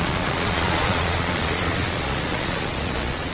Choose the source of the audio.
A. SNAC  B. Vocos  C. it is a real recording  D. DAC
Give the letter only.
B